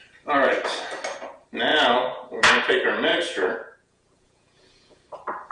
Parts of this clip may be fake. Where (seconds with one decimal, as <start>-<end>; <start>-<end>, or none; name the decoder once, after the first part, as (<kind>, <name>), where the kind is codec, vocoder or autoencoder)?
1.7-2.5 (vocoder, Vocos); 3.1-5.0